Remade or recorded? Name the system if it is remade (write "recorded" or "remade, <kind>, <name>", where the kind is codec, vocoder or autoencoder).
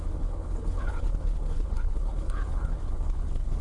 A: remade, codec, HILCodec